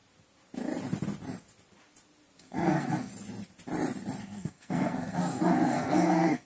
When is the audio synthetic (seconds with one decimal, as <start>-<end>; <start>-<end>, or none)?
2.4-3.1; 4.2-6.5